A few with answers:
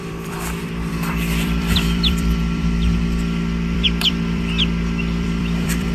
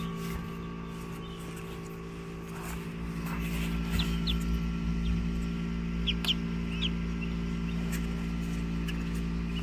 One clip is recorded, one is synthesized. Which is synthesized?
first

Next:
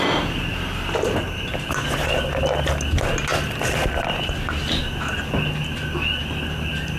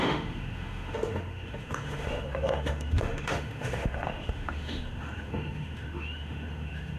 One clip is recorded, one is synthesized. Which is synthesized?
second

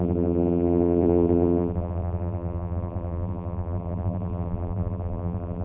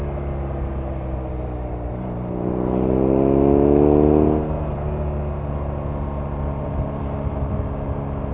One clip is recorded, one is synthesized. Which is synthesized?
first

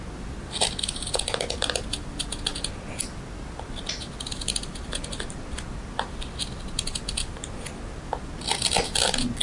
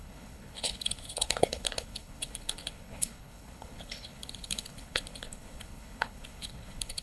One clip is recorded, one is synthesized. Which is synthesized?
second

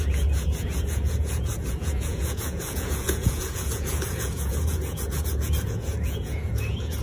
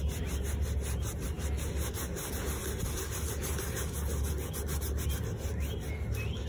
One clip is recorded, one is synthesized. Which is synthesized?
first